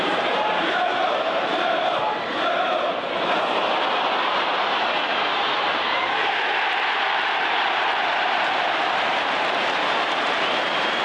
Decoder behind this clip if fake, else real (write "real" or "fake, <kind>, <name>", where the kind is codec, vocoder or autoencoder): fake, vocoder, BigVGAN v2